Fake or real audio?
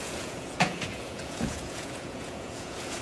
fake